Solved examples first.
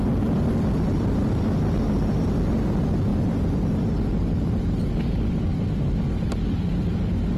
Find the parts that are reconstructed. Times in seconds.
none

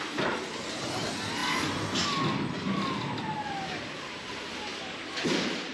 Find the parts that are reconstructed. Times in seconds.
4.7-5.2 (codec, DAC)